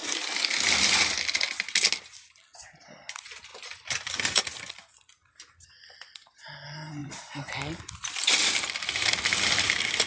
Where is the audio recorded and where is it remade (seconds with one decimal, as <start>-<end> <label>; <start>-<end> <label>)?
0.0-3.5 recorded; 3.5-4.7 remade; 4.7-7.0 recorded; 7.0-7.8 remade; 7.8-10.1 recorded